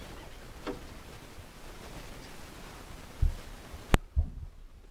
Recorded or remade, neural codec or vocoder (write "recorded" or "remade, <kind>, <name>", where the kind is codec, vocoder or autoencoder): recorded